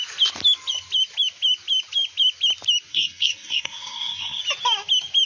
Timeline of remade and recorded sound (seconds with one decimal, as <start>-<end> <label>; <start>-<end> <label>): 0.0-2.9 recorded; 2.9-4.4 remade; 4.4-5.3 recorded